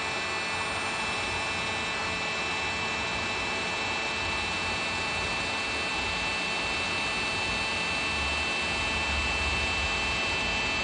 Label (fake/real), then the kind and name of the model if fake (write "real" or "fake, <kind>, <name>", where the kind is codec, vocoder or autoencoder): real